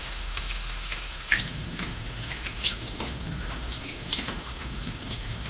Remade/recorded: remade